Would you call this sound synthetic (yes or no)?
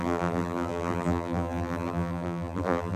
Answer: yes